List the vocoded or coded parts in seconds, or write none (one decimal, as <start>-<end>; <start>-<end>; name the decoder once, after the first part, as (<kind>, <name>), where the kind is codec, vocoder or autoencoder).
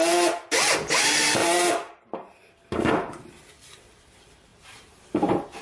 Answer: 1.4-2.1 (vocoder, BigVGAN v2); 4.5-5.6